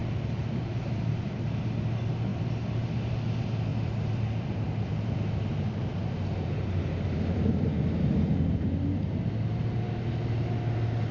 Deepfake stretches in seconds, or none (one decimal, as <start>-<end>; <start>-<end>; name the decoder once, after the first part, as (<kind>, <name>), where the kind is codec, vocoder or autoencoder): 3.7-8.6 (vocoder, BigVGAN v2)